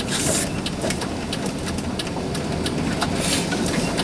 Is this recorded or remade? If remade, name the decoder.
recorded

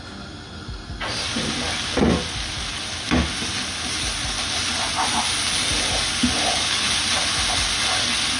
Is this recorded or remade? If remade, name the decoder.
recorded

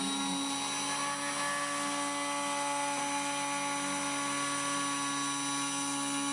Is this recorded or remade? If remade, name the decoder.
recorded